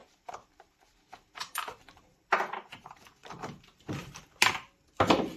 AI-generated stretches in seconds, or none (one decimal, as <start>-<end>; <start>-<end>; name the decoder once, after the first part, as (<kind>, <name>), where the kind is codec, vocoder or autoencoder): 0.0-2.5 (vocoder, BigVGAN v2); 3.2-4.2

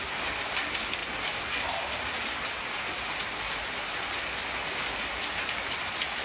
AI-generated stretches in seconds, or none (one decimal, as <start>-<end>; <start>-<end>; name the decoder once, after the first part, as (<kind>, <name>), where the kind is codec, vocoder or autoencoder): 1.0-2.4 (vocoder, BigVGAN v2)

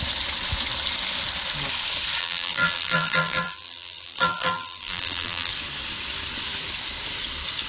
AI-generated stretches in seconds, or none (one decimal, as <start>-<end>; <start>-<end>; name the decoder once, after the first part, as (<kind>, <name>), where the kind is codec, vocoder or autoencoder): 2.2-5.5 (vocoder, BigVGAN v2)

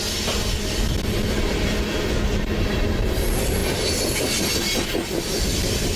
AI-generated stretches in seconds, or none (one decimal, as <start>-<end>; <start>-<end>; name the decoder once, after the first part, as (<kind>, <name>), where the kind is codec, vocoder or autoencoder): none

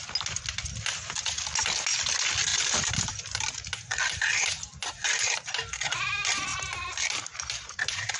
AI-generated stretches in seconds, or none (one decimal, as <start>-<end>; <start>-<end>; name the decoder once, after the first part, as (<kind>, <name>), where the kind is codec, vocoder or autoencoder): 2.5-5.5 (vocoder, BigVGAN v2); 6.5-8.2

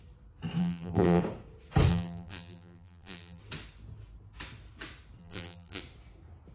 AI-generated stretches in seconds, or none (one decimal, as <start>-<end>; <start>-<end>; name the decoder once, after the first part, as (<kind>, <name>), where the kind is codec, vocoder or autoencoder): 0.6-1.2 (vocoder, BigVGAN v2); 1.9-3.4; 5.2-5.8